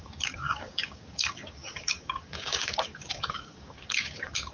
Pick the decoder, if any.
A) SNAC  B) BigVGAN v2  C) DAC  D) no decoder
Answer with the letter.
C